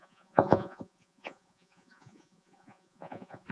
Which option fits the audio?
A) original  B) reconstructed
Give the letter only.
B